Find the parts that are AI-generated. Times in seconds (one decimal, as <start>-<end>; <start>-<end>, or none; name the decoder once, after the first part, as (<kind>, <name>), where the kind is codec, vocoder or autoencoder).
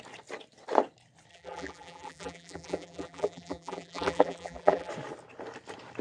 1.3-4.9 (vocoder, BigVGAN v2)